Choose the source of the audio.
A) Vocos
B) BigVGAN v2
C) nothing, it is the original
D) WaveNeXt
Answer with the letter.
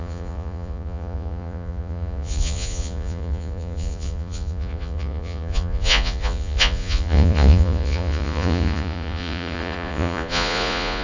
A